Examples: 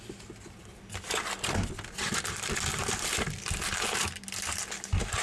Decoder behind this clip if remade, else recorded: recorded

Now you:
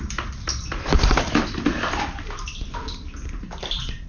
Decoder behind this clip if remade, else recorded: recorded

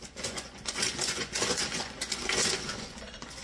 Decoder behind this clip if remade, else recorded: remade, vocoder, Vocos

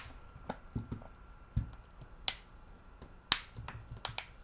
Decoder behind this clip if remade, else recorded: recorded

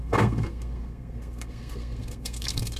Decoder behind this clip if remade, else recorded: remade, codec, SNAC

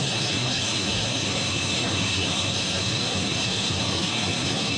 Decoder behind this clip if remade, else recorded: remade, codec, SNAC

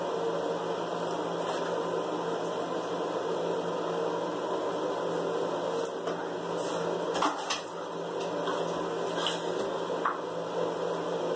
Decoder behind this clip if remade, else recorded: recorded